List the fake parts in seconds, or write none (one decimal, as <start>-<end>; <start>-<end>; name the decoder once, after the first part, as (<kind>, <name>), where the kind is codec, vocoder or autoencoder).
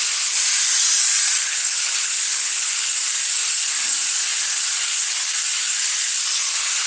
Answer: 1.4-3.0 (codec, HILCodec)